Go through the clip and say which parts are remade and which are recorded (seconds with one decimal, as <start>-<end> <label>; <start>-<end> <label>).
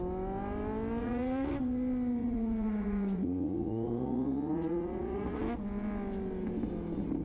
0.0-1.0 recorded; 1.0-1.5 remade; 1.5-2.2 recorded; 2.2-5.4 remade; 5.4-7.2 recorded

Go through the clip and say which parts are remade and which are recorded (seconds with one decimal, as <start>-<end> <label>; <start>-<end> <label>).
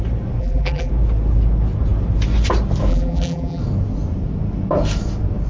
0.0-0.4 recorded; 0.4-0.9 remade; 0.9-2.9 recorded; 2.9-3.6 remade; 3.6-5.5 recorded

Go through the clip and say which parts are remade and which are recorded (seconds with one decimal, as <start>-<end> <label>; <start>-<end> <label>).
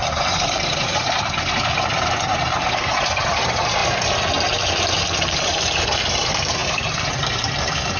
0.0-3.8 remade; 3.8-5.0 recorded; 5.0-8.0 remade